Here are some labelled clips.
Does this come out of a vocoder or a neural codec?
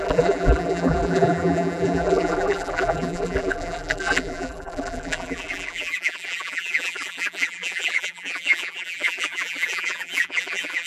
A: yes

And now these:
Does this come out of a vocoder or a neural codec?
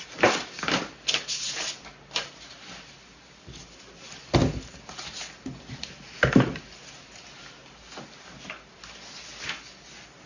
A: no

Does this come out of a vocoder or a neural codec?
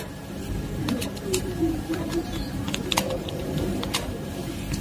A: yes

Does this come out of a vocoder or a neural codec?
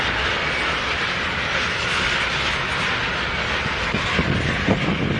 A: no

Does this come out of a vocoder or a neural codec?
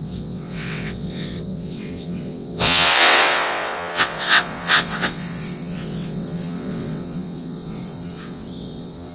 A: yes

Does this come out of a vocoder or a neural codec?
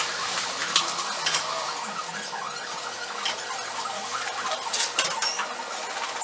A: no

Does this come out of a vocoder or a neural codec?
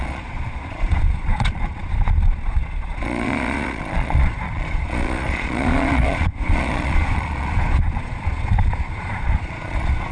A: yes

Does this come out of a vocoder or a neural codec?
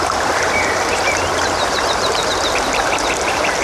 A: yes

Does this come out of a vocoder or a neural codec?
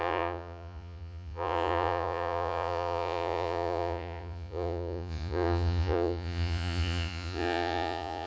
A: yes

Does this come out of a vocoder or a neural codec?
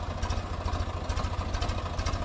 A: no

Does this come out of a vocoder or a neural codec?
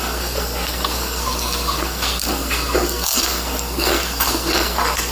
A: yes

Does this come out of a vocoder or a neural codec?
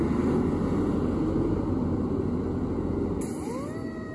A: no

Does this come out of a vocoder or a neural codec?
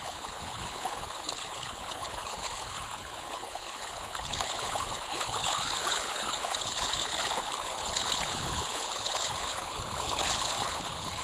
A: yes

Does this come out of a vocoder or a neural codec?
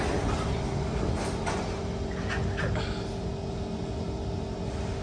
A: no